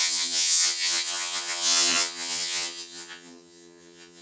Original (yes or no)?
no